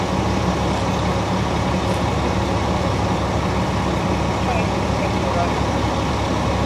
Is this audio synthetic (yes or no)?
no